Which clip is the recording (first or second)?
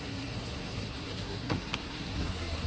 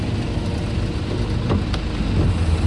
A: second